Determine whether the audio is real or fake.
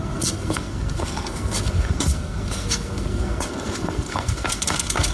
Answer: fake